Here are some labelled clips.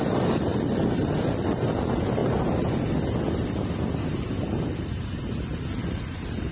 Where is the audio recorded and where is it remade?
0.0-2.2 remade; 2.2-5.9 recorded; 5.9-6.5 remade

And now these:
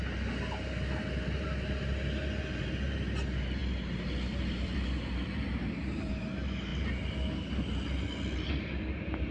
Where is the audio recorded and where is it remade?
0.0-3.6 recorded; 3.6-6.2 remade; 6.2-9.3 recorded

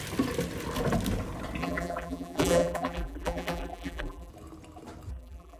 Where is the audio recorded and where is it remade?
0.0-1.6 recorded; 1.6-4.3 remade; 4.3-5.1 recorded; 5.1-5.6 remade

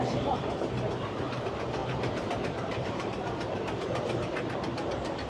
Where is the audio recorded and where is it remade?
0.0-1.8 recorded; 1.8-5.3 remade

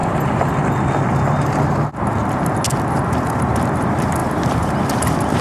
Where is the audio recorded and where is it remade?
0.0-0.5 remade; 0.5-4.2 recorded; 4.2-4.7 remade; 4.7-5.4 recorded

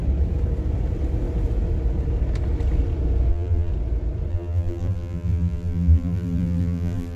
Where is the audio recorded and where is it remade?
0.0-3.3 recorded; 3.3-3.7 remade; 3.7-4.3 recorded; 4.3-7.2 remade

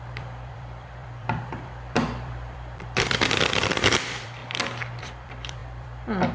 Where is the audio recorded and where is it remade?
0.0-4.4 remade; 4.4-5.0 recorded; 5.0-6.3 remade